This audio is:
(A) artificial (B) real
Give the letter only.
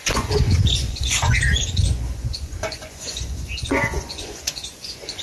A